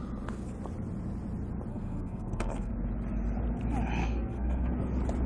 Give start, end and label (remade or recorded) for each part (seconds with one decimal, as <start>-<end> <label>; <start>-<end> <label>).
0.0-1.7 recorded; 1.7-2.7 remade; 2.7-4.0 recorded; 4.0-4.7 remade; 4.7-5.3 recorded